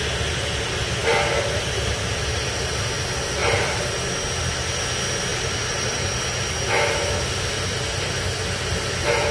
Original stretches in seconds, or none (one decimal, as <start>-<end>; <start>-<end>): 0.0-3.4; 3.9-5.3; 6.1-9.3